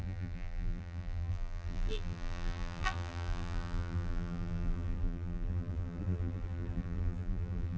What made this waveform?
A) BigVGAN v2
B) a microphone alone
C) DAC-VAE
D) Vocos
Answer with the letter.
A